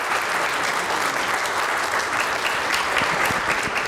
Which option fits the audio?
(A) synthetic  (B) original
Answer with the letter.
B